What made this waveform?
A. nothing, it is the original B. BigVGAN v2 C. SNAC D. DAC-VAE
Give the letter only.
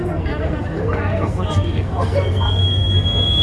C